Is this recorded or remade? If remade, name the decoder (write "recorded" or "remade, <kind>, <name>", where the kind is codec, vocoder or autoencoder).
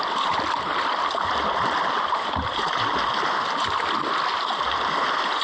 recorded